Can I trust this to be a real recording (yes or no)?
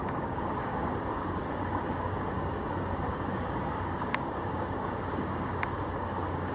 no